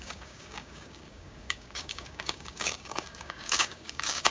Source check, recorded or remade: remade